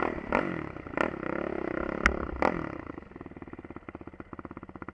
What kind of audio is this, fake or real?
real